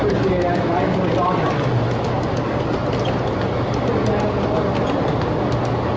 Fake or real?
real